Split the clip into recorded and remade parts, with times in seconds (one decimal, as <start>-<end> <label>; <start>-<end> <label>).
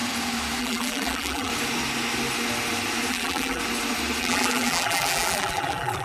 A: 0.0-0.6 recorded; 0.6-1.5 remade; 1.5-3.1 recorded; 3.1-3.6 remade; 3.6-4.2 recorded; 4.2-6.0 remade